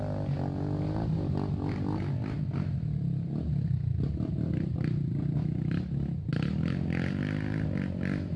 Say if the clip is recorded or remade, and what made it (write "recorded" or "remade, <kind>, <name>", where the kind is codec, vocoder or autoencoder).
recorded